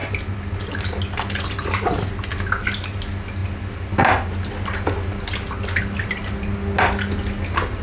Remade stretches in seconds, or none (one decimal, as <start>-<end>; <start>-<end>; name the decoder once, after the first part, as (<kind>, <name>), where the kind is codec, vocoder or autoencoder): none